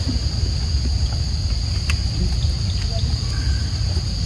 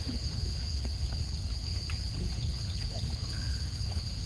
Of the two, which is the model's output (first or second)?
second